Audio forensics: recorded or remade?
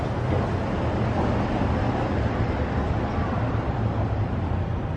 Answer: recorded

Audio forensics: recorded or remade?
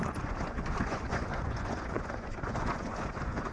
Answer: remade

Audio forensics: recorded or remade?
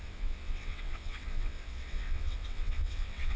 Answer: remade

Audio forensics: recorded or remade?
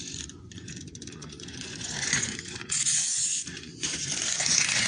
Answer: remade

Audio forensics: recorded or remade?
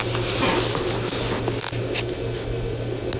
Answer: recorded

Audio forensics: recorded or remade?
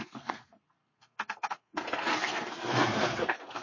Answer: remade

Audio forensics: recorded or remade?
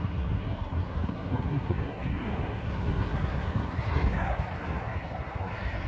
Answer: remade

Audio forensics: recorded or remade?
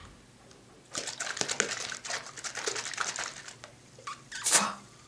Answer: recorded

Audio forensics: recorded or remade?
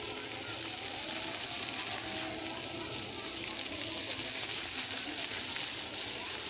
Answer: recorded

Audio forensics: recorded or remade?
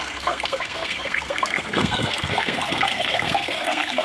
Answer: remade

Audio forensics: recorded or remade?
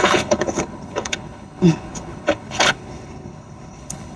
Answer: remade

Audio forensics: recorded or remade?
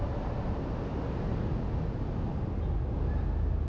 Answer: recorded